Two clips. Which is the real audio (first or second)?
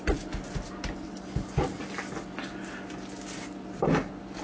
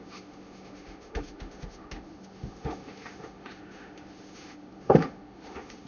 first